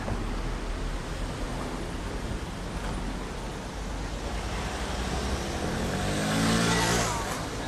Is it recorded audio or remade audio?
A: recorded